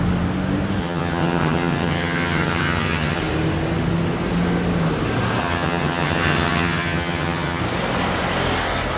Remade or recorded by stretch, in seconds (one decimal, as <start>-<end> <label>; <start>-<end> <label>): 0.0-0.8 recorded; 0.8-3.2 remade; 3.2-5.4 recorded; 5.4-7.6 remade; 7.6-9.0 recorded